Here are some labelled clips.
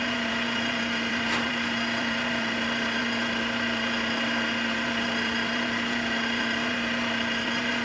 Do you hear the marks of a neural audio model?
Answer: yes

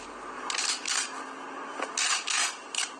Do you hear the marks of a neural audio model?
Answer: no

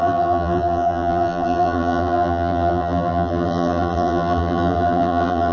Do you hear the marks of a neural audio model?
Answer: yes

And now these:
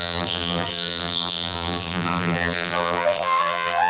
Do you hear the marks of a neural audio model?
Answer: yes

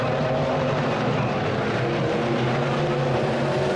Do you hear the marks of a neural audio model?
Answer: yes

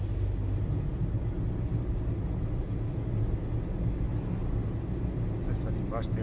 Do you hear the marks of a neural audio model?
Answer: no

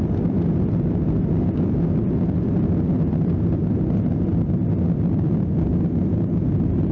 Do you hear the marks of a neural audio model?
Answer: no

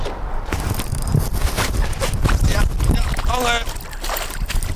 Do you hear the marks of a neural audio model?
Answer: no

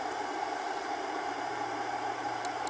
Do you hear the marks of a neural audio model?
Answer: yes